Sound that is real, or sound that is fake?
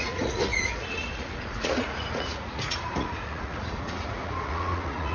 fake